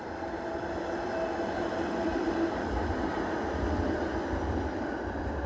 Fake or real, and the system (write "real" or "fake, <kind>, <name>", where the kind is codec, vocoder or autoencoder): fake, vocoder, BigVGAN v2